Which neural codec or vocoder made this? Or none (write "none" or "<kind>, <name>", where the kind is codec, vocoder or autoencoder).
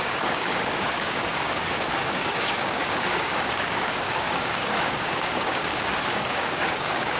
codec, DAC